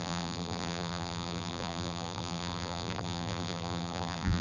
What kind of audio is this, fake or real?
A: fake